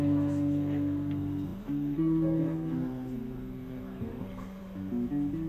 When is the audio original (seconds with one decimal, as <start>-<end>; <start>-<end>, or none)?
4.6-5.5